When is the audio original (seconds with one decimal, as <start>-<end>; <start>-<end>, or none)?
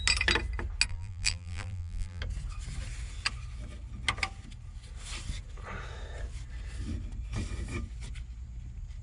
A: 0.0-0.9; 2.2-9.0